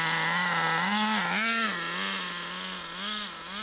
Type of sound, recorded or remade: recorded